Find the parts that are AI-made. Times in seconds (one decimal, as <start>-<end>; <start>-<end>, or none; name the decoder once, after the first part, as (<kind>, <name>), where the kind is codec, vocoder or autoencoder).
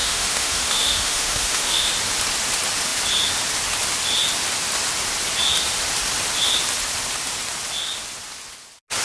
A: 0.0-1.9 (autoencoder, DAC-VAE)